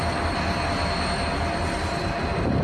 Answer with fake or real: real